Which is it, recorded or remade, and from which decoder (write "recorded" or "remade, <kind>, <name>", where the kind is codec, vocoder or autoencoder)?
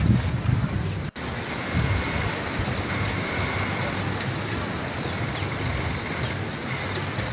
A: recorded